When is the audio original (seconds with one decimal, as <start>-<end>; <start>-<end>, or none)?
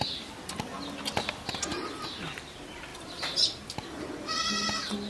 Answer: 0.0-1.7; 2.2-5.1